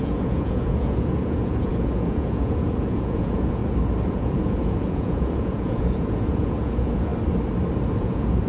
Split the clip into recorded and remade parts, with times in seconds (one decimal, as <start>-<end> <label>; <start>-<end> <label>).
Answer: 0.0-3.6 remade; 3.6-4.1 recorded; 4.1-7.1 remade; 7.1-8.0 recorded; 8.0-8.5 remade